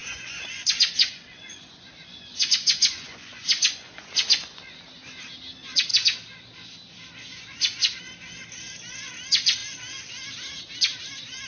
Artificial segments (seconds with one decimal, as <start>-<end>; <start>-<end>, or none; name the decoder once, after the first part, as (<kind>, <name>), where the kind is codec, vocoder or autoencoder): 0.0-4.8 (vocoder, Vocos); 7.3-8.0